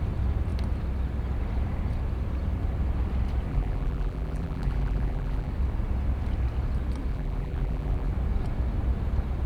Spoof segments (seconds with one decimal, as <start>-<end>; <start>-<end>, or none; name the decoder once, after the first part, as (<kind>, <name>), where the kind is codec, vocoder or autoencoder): 3.5-5.5 (vocoder, BigVGAN v2); 7.1-8.1